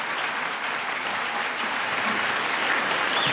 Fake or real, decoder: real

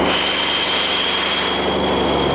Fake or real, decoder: real